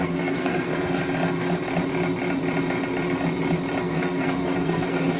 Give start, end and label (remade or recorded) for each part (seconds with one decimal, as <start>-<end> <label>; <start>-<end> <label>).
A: 0.0-1.0 remade; 1.0-3.8 recorded; 3.8-5.2 remade